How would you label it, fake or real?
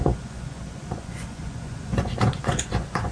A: fake